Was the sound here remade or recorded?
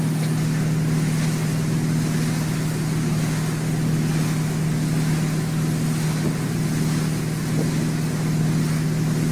recorded